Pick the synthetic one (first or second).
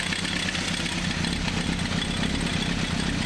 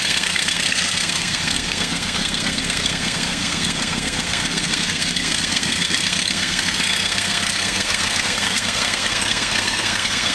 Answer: second